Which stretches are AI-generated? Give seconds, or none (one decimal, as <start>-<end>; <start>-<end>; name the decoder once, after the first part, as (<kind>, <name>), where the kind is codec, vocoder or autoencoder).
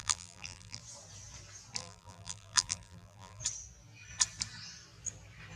0.0-0.8 (vocoder, BigVGAN v2); 1.8-3.4